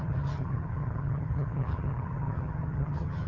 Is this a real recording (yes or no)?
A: no